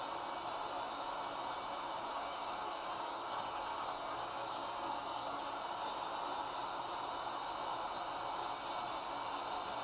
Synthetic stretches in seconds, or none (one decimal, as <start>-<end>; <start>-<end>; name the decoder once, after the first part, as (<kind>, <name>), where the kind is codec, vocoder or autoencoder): 2.1-5.4 (codec, DAC)